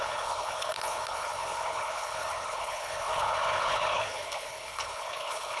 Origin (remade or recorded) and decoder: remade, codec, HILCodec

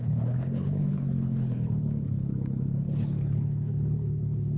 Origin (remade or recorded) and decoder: remade, codec, HILCodec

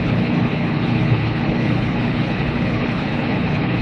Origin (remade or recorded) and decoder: remade, codec, HILCodec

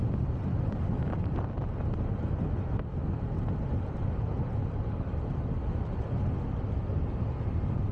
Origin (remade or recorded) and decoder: recorded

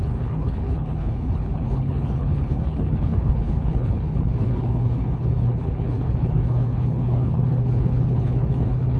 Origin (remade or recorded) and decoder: remade, codec, HILCodec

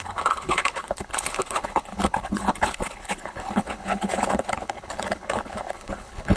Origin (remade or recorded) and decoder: remade, codec, HILCodec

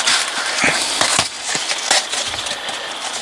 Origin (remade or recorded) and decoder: recorded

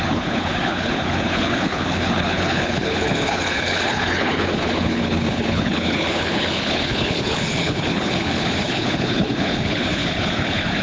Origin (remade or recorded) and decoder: remade, codec, HILCodec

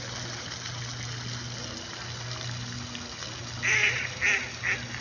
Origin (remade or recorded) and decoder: recorded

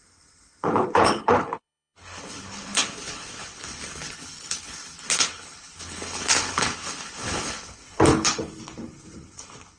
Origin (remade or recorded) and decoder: remade, codec, HILCodec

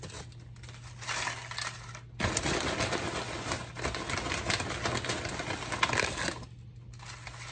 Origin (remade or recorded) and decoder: recorded